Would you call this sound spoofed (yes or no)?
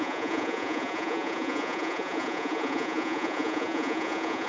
yes